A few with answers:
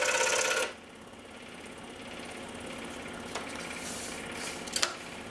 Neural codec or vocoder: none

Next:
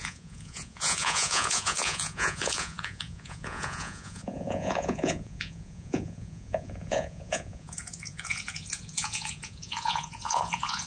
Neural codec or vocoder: vocoder, Vocos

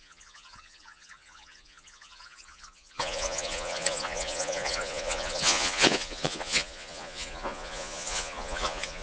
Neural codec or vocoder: vocoder, Vocos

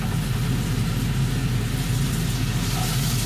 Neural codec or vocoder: none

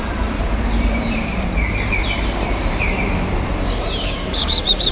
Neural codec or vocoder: vocoder, BigVGAN v2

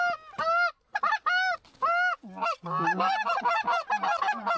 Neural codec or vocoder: none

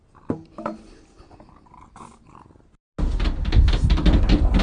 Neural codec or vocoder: none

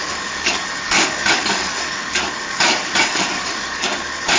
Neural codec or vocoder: codec, DAC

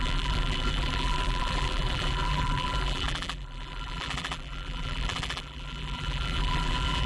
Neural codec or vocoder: vocoder, BigVGAN v2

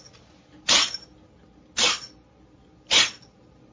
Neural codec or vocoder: none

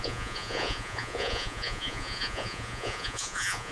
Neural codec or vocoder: vocoder, Vocos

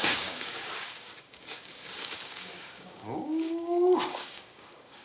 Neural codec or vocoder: codec, DAC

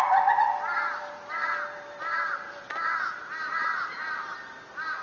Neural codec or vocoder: none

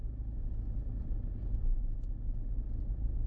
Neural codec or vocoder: none